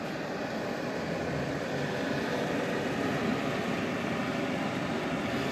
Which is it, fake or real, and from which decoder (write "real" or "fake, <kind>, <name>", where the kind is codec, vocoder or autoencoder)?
real